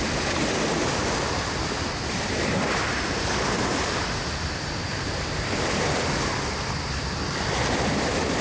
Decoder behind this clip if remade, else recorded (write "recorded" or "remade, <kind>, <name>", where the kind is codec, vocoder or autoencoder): recorded